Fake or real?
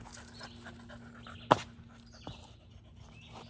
real